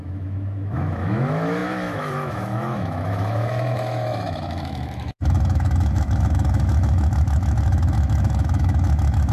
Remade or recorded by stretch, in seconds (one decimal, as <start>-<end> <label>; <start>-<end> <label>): 0.0-9.3 remade